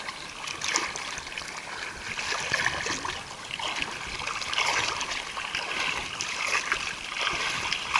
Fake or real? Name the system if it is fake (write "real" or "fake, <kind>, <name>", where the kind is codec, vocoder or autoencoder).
real